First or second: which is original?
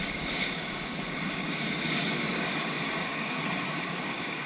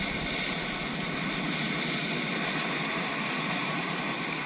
second